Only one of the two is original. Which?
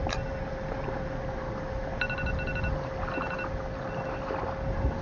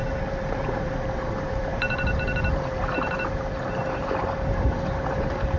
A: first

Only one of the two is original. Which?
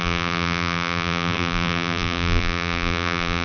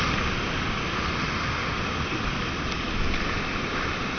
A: second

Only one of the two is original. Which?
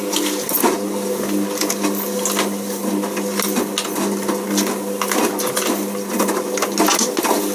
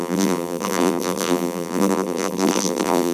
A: first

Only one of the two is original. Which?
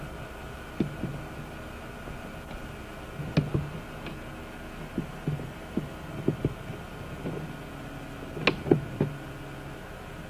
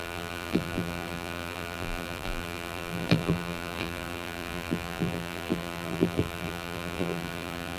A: first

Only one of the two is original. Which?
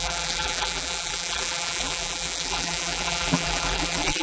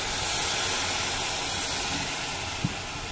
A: second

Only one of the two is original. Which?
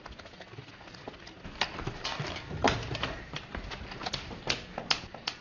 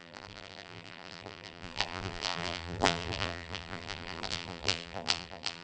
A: first